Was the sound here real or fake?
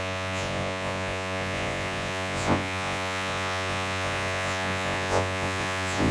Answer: fake